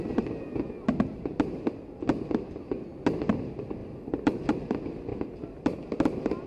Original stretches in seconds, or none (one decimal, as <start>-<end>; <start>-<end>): 0.0-3.8; 4.5-5.1